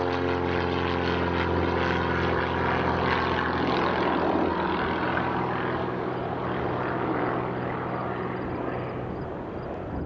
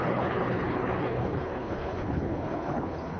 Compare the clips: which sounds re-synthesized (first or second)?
second